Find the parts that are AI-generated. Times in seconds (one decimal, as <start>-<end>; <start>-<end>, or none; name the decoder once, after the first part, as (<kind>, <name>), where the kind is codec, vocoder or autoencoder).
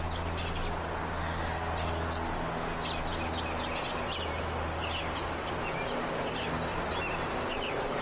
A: 6.7-8.0 (vocoder, BigVGAN v2)